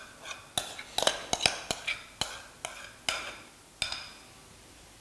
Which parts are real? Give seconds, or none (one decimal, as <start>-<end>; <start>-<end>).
0.0-5.0